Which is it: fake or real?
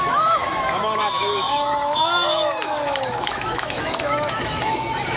fake